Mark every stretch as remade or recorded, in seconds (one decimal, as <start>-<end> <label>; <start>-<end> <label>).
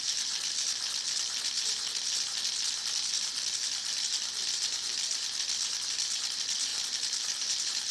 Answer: 0.0-7.9 recorded